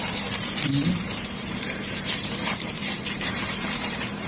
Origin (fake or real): fake